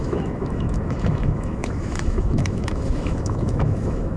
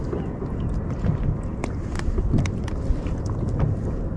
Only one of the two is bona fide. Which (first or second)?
second